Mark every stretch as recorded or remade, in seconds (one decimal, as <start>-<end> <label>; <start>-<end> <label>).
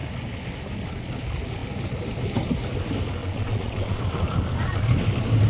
0.0-3.2 recorded; 3.2-4.0 remade; 4.0-5.5 recorded